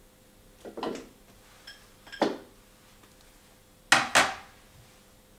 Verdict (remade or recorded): recorded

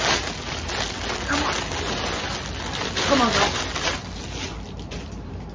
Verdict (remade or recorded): recorded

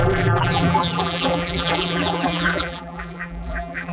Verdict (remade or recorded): remade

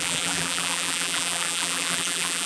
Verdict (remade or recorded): remade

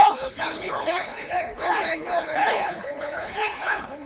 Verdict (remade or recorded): remade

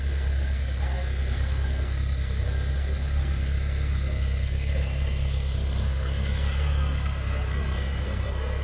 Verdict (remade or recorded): remade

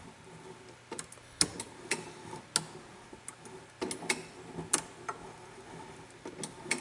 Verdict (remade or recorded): recorded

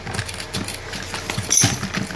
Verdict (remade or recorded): recorded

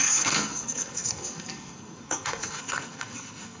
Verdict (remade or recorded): remade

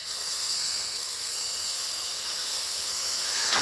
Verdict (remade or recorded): remade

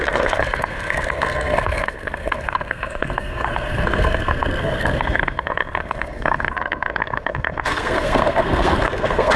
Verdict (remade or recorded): remade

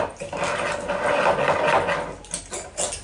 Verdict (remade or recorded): recorded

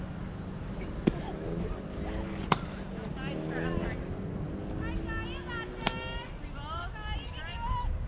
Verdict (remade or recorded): recorded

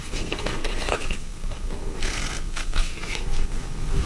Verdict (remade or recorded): remade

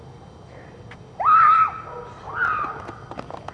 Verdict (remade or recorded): recorded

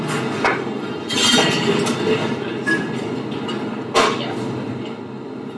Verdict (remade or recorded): recorded